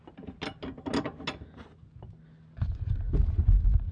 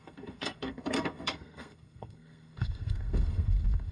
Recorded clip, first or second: first